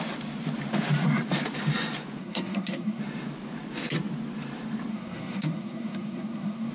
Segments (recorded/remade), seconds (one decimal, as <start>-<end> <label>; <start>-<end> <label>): 0.0-2.2 recorded; 2.2-3.0 remade; 3.0-4.9 recorded; 4.9-6.7 remade